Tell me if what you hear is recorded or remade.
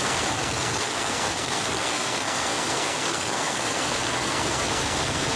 remade